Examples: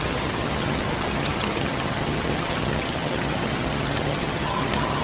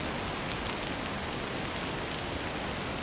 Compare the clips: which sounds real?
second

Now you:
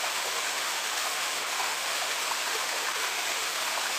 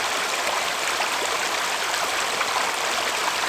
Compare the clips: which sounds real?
second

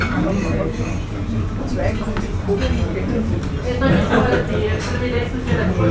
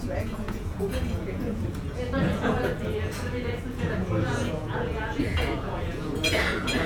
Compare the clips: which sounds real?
first